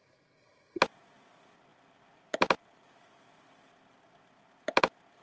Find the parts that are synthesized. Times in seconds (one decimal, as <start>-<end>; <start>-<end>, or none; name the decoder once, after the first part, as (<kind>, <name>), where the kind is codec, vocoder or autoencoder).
0.0-0.8 (codec, SNAC)